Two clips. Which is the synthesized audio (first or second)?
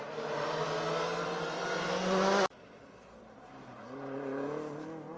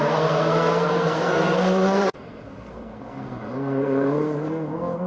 second